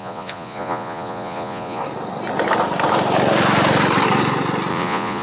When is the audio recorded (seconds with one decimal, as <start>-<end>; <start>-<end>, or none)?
1.8-4.7